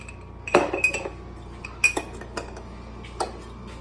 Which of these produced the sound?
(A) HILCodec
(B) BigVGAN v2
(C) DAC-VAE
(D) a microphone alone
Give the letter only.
D